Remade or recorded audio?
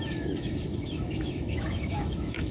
remade